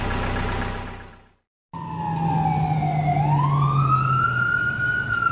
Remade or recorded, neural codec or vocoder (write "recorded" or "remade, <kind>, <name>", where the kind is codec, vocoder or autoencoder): recorded